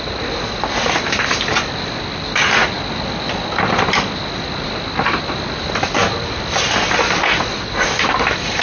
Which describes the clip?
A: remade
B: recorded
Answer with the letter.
B